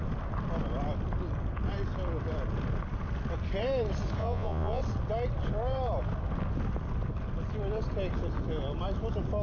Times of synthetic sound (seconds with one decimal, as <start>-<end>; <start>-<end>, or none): 4.2-4.8